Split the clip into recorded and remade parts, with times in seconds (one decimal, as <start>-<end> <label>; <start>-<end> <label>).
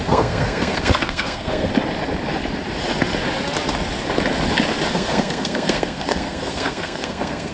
0.0-1.7 remade; 1.7-4.9 recorded; 4.9-7.5 remade